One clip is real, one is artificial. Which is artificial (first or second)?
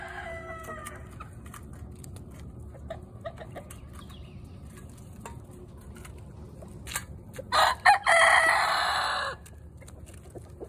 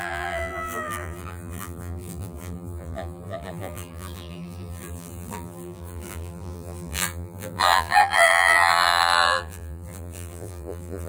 second